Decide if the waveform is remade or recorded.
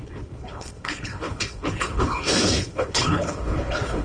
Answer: remade